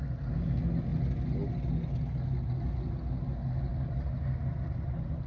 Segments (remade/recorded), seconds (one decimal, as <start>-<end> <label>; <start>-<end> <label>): 0.0-5.3 recorded

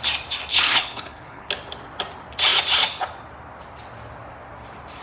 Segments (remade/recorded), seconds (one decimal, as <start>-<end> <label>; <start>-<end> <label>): 0.0-0.5 recorded; 0.5-1.5 remade; 1.5-5.0 recorded

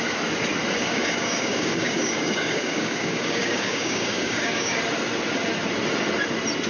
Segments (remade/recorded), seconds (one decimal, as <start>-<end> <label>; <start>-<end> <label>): 0.0-0.8 recorded; 0.8-4.8 remade; 4.8-6.7 recorded

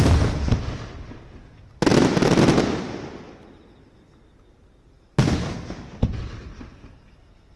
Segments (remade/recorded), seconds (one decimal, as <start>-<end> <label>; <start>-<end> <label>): 0.0-7.6 recorded

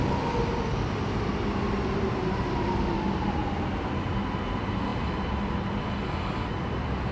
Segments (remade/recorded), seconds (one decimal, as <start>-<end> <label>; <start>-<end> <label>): 0.0-7.1 recorded

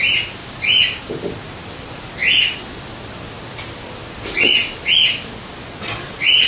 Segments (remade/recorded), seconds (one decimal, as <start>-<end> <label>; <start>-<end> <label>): 0.0-6.5 recorded

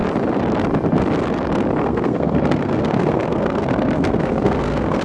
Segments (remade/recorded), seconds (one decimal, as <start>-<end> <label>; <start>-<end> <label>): 0.0-1.8 recorded; 1.8-5.0 remade